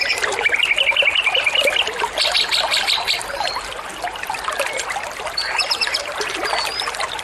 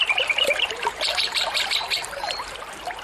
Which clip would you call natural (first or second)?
first